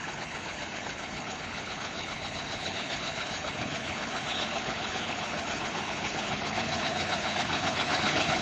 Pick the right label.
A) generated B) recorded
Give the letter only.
A